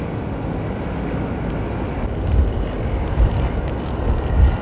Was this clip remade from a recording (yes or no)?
no